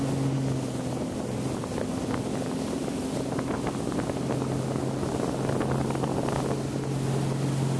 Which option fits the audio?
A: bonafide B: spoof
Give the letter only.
A